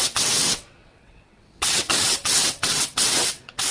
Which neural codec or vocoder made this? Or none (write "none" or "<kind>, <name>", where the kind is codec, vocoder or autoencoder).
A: vocoder, WaveNeXt